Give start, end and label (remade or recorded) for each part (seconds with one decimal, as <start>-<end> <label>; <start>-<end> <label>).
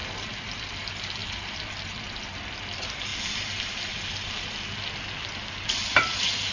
0.0-0.6 remade; 0.6-1.2 recorded; 1.2-2.0 remade; 2.0-6.5 recorded